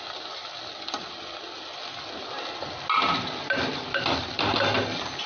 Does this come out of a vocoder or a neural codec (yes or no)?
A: no